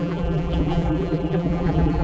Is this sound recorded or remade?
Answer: remade